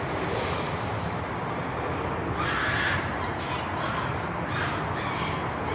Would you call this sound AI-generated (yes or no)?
no